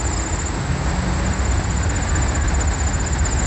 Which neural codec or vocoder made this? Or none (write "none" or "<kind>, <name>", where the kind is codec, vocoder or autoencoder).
none